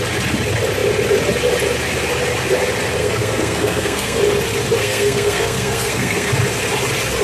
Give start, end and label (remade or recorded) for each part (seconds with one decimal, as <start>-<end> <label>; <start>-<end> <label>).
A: 0.0-3.0 recorded; 3.0-4.2 remade; 4.2-4.8 recorded; 4.8-6.3 remade; 6.3-7.2 recorded